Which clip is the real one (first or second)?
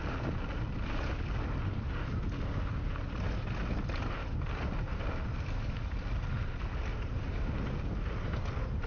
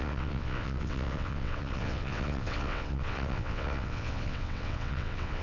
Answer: first